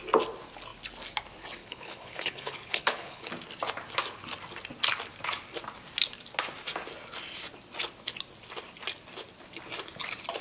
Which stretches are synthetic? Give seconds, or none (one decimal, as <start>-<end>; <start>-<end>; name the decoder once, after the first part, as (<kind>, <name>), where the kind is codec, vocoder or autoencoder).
1.6-3.3 (codec, HILCodec)